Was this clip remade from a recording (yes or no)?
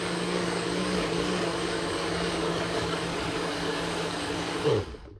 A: yes